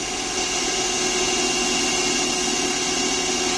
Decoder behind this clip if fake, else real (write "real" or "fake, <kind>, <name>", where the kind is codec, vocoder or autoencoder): real